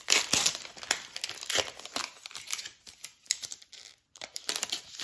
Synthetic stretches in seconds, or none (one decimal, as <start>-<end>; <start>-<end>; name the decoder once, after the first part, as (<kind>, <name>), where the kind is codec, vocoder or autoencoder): 2.0-2.6 (vocoder, BigVGAN v2); 3.1-4.5